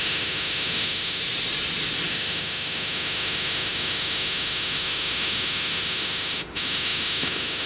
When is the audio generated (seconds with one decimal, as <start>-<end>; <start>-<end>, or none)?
0.0-1.2; 2.1-7.7